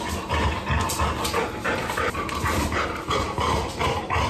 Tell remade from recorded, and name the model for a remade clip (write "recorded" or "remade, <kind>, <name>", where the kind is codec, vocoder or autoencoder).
recorded